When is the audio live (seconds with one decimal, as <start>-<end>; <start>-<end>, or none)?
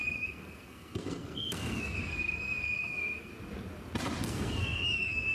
3.3-4.2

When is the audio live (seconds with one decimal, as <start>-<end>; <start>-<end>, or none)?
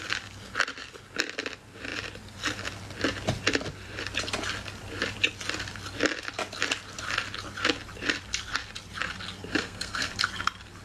0.0-9.5; 10.1-10.8